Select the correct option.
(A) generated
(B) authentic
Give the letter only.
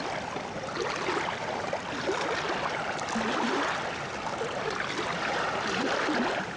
B